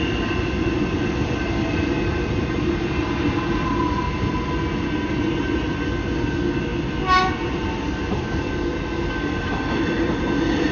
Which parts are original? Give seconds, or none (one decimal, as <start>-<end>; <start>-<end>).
0.0-10.7